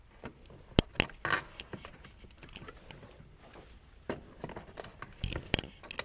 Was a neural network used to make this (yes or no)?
no